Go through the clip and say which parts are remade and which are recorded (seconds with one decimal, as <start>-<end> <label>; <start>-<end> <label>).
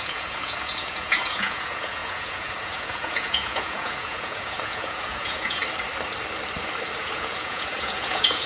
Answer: 0.0-5.6 remade; 5.6-7.0 recorded; 7.0-8.5 remade